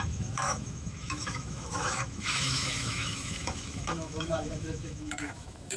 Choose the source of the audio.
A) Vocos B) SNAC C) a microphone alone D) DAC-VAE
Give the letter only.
D